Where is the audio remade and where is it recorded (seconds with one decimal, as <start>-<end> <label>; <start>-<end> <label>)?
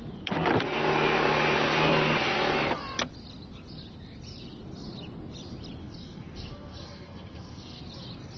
0.0-5.8 recorded; 5.8-7.8 remade; 7.8-8.4 recorded